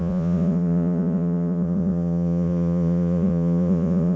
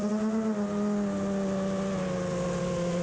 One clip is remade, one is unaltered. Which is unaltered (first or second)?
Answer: second